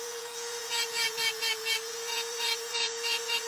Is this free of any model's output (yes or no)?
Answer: no